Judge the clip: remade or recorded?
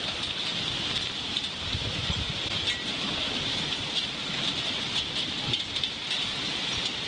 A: recorded